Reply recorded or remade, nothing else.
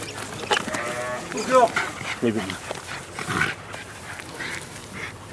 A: recorded